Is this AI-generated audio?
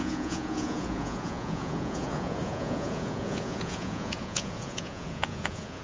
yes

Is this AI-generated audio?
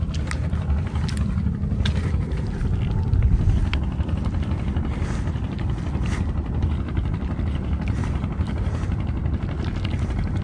no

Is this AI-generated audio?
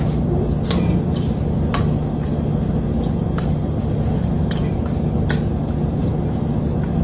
no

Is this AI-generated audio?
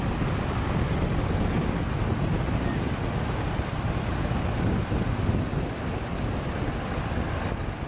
no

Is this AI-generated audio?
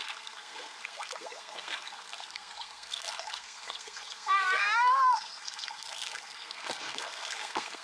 yes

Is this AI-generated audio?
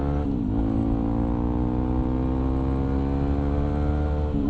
no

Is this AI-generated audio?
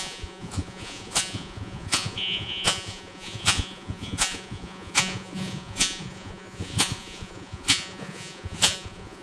yes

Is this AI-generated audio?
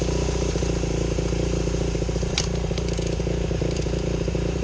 yes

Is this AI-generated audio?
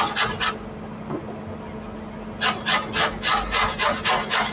no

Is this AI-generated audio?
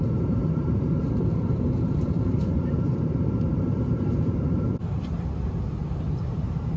yes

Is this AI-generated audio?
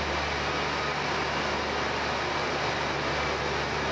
no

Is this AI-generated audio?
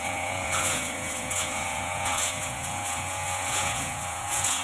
yes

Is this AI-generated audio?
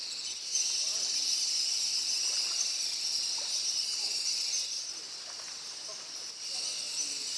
no